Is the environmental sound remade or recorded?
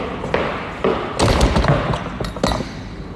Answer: recorded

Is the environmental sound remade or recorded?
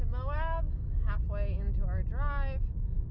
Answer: recorded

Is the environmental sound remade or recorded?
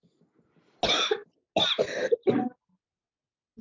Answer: recorded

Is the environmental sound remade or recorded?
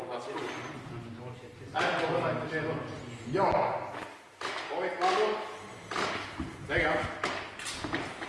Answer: recorded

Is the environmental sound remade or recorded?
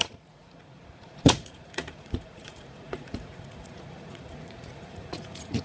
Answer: remade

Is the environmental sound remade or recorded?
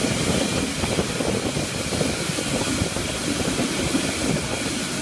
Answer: recorded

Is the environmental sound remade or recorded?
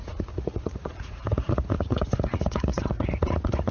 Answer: remade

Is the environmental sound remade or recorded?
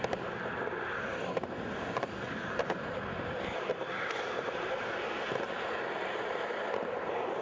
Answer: recorded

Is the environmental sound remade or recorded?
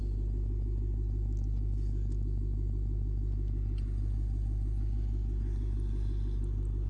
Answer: recorded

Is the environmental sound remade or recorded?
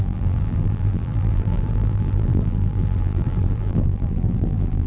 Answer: remade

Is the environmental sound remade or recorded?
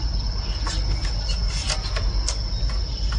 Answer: recorded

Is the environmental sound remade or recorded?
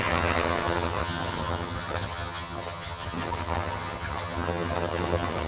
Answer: remade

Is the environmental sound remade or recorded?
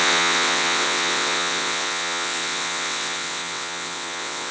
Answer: remade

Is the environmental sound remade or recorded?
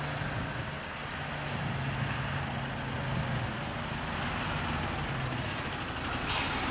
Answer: recorded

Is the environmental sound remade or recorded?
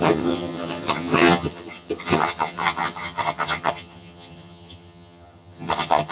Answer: remade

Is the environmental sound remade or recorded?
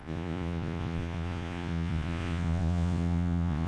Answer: remade